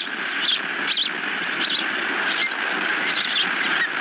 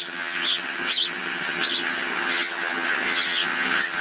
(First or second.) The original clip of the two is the first